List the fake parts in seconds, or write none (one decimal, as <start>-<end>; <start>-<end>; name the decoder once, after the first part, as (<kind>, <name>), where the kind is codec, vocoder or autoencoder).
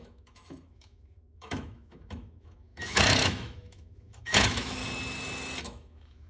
0.0-4.8 (autoencoder, DAC-VAE); 5.6-6.3